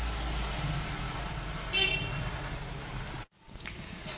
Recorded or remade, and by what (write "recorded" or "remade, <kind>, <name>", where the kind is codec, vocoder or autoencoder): recorded